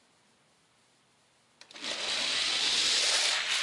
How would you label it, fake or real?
real